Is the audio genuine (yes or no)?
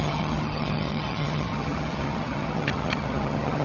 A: no